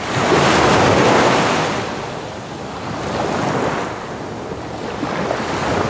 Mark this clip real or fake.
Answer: real